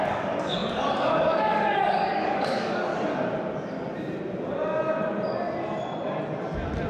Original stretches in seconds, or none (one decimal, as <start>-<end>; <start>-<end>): 2.9-6.9